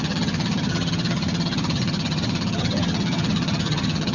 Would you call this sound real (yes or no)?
no